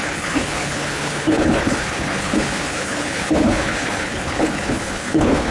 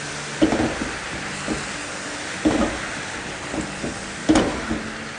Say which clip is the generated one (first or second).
first